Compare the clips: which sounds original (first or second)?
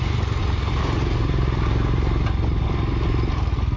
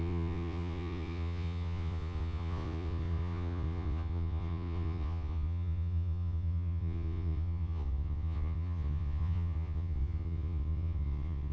first